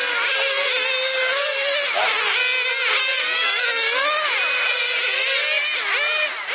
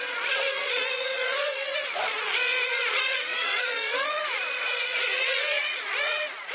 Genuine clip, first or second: first